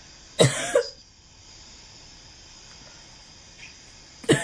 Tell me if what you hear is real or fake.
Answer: fake